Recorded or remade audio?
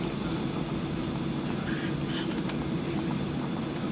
recorded